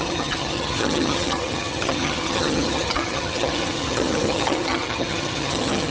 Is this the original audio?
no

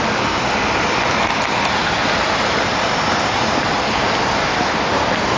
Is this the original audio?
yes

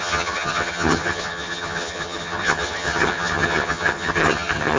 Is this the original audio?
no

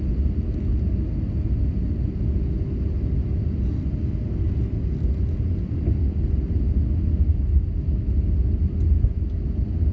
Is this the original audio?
yes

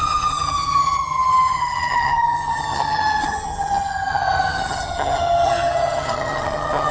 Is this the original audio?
no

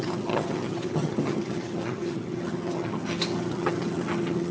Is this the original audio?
no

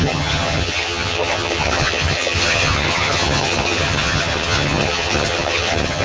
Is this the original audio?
no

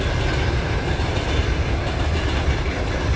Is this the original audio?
yes